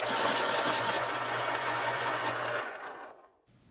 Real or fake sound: fake